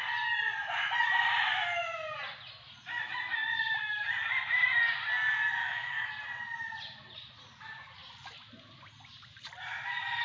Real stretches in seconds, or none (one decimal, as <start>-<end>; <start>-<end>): 0.0-5.6; 6.1-10.2